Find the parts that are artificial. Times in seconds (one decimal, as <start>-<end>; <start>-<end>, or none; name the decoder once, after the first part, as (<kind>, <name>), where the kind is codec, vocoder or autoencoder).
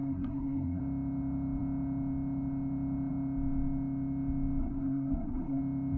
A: 0.0-0.8 (codec, SNAC); 4.6-5.6